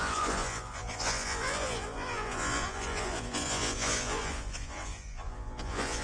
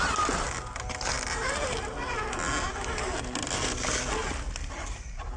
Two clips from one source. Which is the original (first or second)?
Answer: second